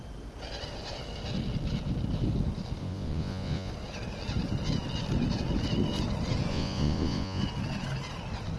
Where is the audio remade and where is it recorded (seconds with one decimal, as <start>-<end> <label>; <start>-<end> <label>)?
0.0-2.8 recorded; 2.8-3.7 remade; 3.7-6.5 recorded; 6.5-7.4 remade; 7.4-8.6 recorded